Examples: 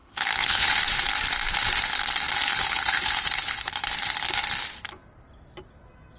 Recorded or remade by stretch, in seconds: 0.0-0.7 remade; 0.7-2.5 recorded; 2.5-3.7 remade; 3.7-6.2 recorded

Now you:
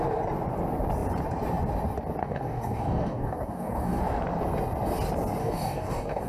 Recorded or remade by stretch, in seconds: 0.0-2.2 recorded; 2.2-4.0 remade; 4.0-5.4 recorded; 5.4-6.3 remade

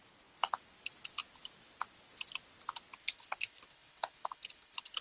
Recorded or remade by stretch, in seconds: 0.0-5.0 recorded

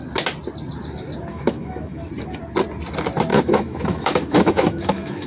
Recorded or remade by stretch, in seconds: 0.0-1.3 recorded; 1.3-2.1 remade; 2.1-3.3 recorded; 3.3-5.3 remade

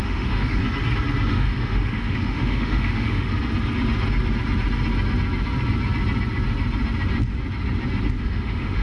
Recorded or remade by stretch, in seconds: 0.0-0.6 remade; 0.6-1.3 recorded; 1.3-3.3 remade; 3.3-8.2 recorded; 8.2-8.8 remade